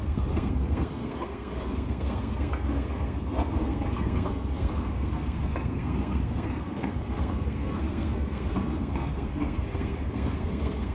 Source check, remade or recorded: remade